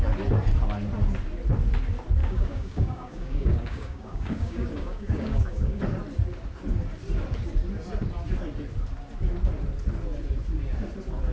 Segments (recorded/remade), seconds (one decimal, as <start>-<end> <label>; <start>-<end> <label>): 0.0-2.2 recorded; 2.2-5.8 remade; 5.8-11.3 recorded